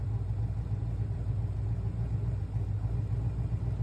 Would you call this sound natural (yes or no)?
yes